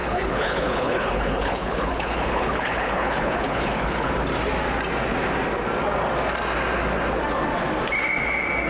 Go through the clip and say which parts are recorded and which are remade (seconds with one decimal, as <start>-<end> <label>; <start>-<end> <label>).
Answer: 0.0-4.1 remade; 4.1-8.7 recorded